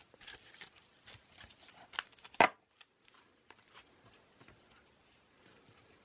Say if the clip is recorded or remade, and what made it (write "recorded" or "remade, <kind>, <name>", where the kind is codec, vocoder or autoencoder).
recorded